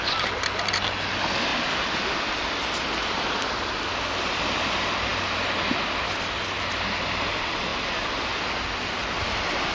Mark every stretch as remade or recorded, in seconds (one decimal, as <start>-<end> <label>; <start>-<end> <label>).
0.0-9.7 recorded